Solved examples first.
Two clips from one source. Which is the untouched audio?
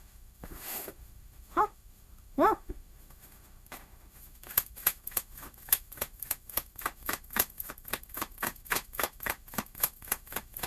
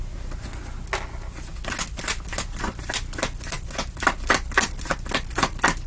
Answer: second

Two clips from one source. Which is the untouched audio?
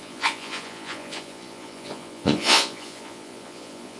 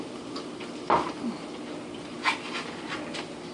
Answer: second